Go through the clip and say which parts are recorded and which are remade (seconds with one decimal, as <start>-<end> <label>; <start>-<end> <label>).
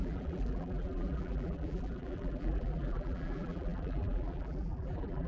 0.0-5.3 remade